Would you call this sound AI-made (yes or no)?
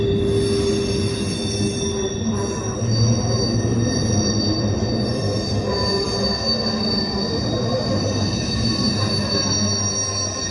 no